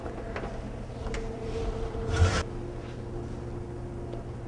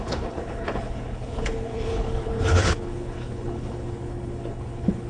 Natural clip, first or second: first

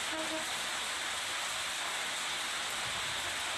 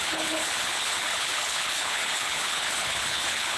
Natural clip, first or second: first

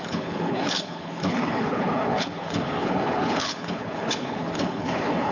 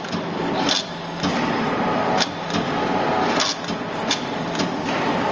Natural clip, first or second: second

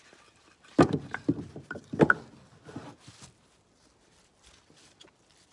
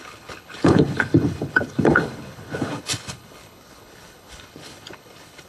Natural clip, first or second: first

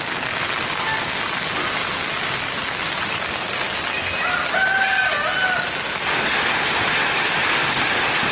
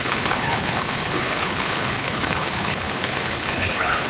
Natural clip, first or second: first